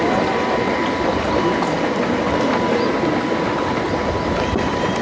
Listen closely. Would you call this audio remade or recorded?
recorded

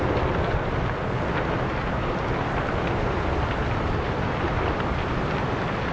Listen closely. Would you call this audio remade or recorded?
recorded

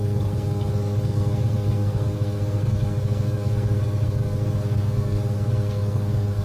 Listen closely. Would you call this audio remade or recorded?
remade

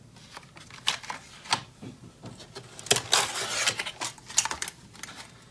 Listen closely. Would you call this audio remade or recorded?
recorded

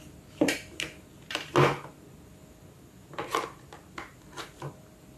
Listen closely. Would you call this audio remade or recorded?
recorded